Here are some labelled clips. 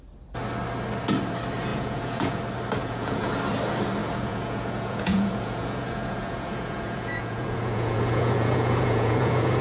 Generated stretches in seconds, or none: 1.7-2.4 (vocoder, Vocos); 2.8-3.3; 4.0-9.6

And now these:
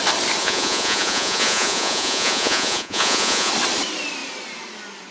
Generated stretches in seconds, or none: 0.4-3.5 (vocoder, Vocos)

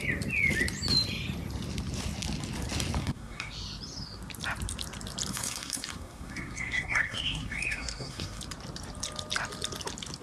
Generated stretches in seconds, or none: 3.0-3.5 (codec, SNAC); 5.3-8.4

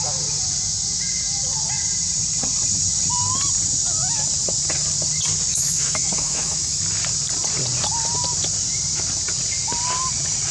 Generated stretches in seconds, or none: 5.5-6.8 (autoencoder, DAC-VAE)

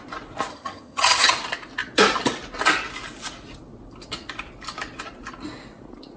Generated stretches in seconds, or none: 0.5-1.3 (vocoder, HiFi-GAN)

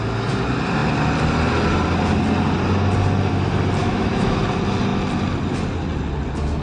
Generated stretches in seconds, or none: 3.8-4.4 (autoencoder, DAC-VAE)

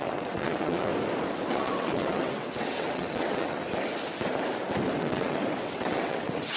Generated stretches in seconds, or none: 0.0-0.9 (vocoder, WaveNeXt); 1.5-3.6; 5.0-6.6

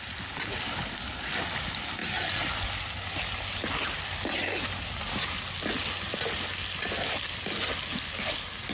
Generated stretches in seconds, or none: none